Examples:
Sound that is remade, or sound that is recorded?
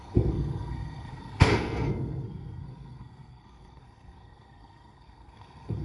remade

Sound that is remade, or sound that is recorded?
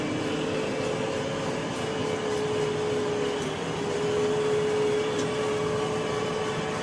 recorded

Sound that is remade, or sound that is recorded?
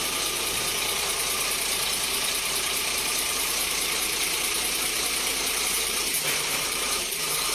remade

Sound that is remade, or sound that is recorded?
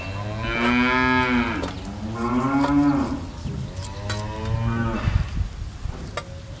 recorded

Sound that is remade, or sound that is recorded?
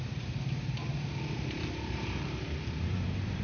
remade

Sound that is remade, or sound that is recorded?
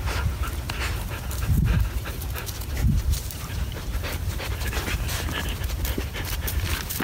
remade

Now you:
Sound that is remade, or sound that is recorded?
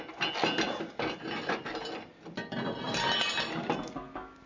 recorded